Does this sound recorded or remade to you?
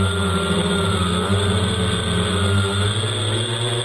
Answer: recorded